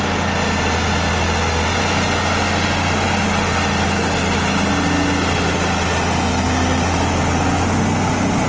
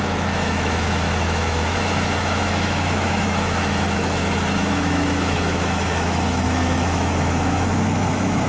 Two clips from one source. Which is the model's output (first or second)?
second